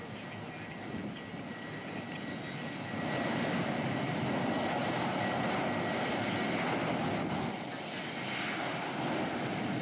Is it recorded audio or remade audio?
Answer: recorded